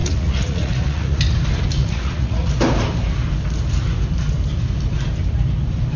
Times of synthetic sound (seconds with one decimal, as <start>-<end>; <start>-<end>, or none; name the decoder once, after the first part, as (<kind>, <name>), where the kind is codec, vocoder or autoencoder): 0.0-1.2 (vocoder, Vocos); 1.8-2.5